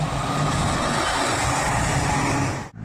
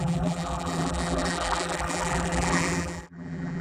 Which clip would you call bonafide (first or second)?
first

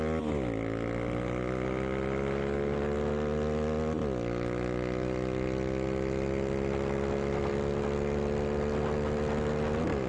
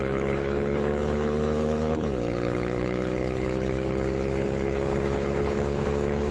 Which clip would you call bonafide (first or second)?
first